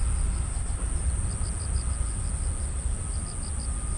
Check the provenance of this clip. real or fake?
real